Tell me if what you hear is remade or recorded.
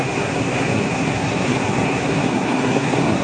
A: remade